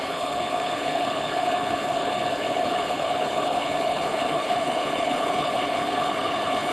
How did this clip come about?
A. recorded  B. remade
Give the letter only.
B